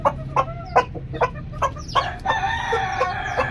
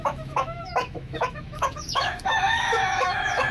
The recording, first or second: first